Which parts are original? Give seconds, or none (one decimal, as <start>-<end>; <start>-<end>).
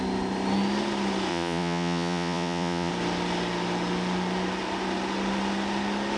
0.0-1.3; 2.9-6.2